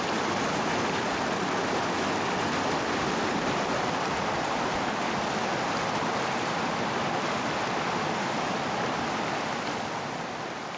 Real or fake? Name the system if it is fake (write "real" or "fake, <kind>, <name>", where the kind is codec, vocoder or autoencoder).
real